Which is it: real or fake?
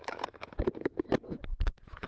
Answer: fake